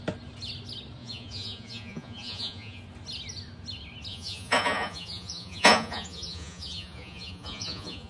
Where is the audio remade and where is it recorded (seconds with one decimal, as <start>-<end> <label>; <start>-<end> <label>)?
0.0-1.0 recorded; 1.0-2.8 remade; 2.8-4.1 recorded; 4.1-8.1 remade